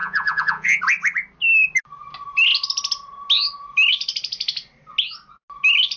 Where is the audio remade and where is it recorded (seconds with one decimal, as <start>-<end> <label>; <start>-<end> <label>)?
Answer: 0.0-0.8 remade; 0.8-6.0 recorded